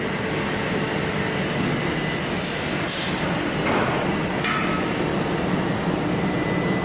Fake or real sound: real